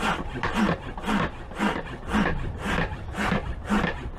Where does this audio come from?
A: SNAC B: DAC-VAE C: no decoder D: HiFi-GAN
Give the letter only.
C